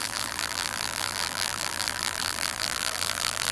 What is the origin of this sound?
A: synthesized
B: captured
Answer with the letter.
A